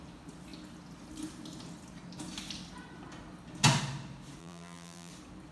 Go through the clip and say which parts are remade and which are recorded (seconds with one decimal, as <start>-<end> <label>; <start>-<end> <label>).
0.0-4.4 recorded; 4.4-5.1 remade; 5.1-5.5 recorded